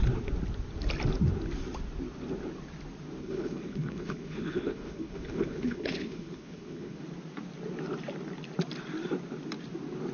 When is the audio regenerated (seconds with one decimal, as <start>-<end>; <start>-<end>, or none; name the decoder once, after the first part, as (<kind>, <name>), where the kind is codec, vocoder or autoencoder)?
3.2-7.0 (codec, HILCodec)